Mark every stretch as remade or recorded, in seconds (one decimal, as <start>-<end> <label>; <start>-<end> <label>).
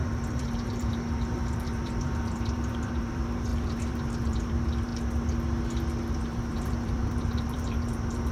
0.0-4.9 remade; 4.9-6.1 recorded; 6.1-8.3 remade